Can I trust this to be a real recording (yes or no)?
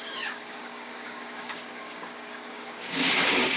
no